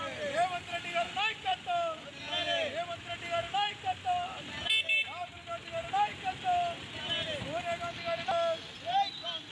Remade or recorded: recorded